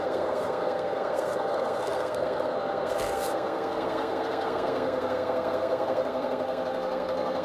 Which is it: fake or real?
fake